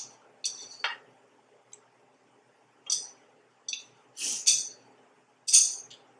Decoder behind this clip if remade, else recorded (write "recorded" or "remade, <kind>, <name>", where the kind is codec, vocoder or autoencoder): recorded